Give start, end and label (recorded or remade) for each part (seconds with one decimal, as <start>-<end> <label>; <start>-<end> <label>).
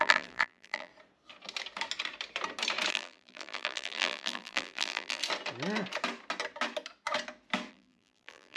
0.0-0.9 remade; 0.9-2.9 recorded; 2.9-5.2 remade; 5.2-7.7 recorded; 7.7-8.6 remade